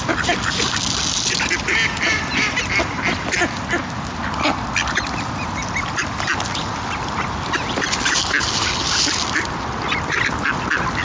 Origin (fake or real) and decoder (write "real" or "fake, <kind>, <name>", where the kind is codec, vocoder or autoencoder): real